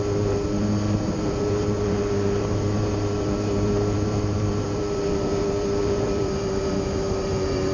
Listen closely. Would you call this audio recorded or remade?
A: remade